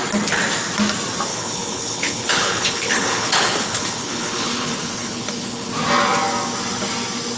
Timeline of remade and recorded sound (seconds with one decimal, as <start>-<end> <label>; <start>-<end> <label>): 0.0-1.3 recorded; 1.3-5.7 remade; 5.7-7.4 recorded